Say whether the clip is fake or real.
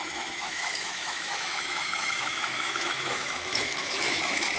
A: fake